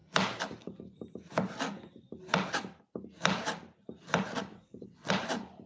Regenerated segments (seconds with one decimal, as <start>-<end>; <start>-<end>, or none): 4.5-5.1